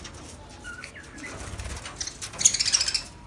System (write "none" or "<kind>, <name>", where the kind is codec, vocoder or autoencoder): none